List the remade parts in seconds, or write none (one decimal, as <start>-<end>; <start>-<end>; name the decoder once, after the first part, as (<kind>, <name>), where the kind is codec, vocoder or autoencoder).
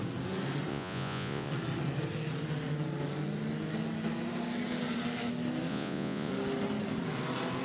0.7-1.5 (vocoder, Vocos); 5.7-6.3